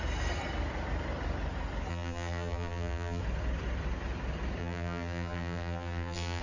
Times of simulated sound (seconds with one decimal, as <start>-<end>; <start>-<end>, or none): 1.9-3.2; 4.6-6.4